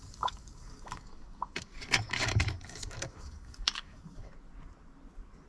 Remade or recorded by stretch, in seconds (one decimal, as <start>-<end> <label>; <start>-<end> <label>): 0.0-4.3 remade; 4.3-5.5 recorded

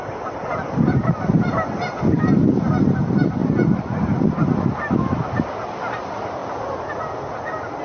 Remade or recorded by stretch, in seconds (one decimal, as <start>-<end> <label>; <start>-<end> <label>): 0.0-7.8 recorded

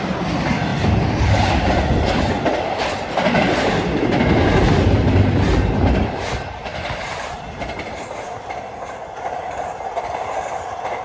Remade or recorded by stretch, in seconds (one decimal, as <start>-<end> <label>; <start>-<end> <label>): 0.0-11.0 recorded

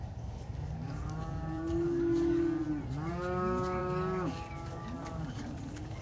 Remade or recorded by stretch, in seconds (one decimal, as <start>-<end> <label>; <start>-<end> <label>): 0.0-2.6 remade; 2.6-3.1 recorded; 3.1-6.0 remade

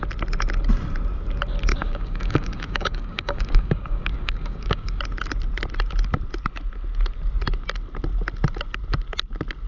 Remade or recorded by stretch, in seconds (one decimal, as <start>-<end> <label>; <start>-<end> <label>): 0.0-1.7 recorded; 1.7-5.0 remade; 5.0-9.7 recorded

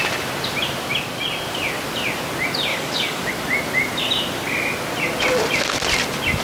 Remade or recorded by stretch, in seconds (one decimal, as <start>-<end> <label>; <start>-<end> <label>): 0.0-2.7 recorded; 2.7-3.3 remade; 3.3-6.4 recorded

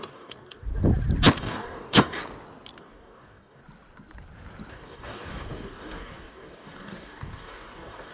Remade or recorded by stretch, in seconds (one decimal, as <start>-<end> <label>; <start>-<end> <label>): 0.0-0.7 remade; 0.7-1.4 recorded; 1.4-2.2 remade; 2.2-2.8 recorded; 2.8-3.6 remade; 3.6-4.7 recorded; 4.7-8.1 remade